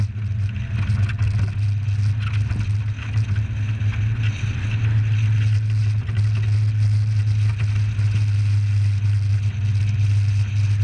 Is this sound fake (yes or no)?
no